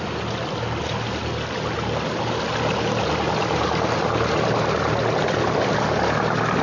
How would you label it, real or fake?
real